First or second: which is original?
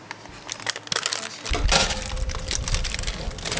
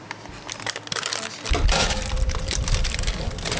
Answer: first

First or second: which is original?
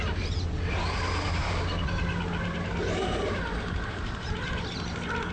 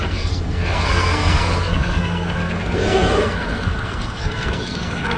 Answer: first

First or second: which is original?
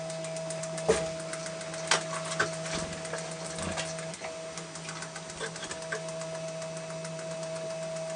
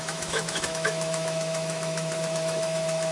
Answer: first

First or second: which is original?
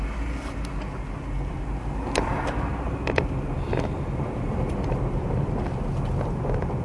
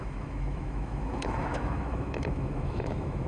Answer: first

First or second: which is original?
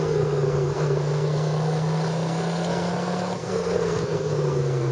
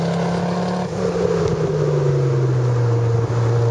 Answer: second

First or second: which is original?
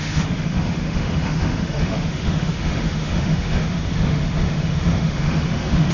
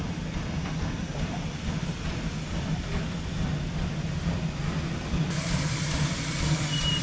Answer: second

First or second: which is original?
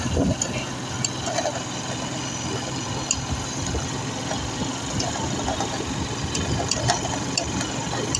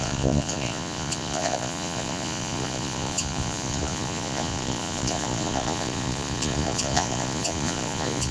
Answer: first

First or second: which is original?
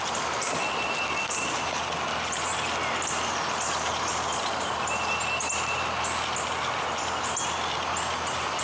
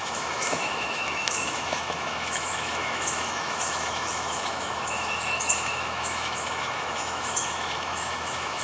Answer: first